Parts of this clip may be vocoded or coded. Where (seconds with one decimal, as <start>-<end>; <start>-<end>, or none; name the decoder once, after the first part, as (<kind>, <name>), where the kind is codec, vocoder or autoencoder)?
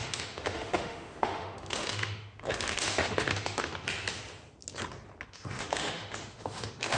0.0-3.7 (autoencoder, DAC-VAE); 5.3-7.0